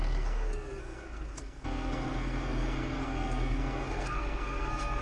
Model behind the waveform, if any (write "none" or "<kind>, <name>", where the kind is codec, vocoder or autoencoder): codec, SNAC